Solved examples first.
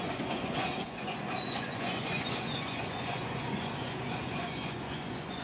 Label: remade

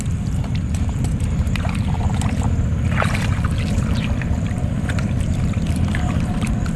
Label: remade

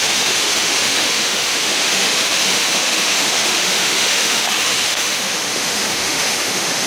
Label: remade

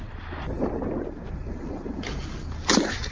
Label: recorded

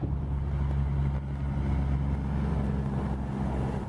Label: recorded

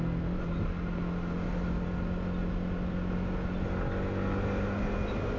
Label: recorded